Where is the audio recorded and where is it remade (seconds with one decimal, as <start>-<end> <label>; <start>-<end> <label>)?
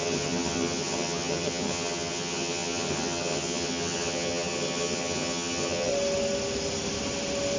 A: 0.0-5.9 remade; 5.9-7.6 recorded